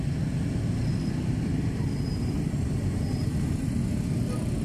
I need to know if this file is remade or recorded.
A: recorded